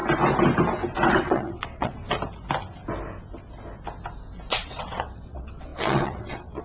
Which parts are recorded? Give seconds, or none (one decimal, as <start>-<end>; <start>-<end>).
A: 0.0-1.1; 2.0-4.5